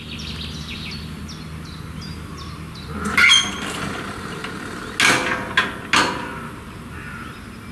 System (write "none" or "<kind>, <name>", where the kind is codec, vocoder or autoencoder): none